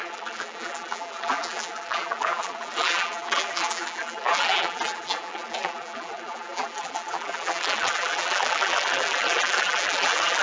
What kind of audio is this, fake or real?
fake